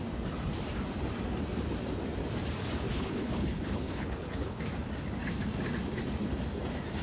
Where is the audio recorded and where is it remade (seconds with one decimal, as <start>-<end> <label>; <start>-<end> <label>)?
0.0-2.9 recorded; 2.9-4.6 remade; 4.6-7.0 recorded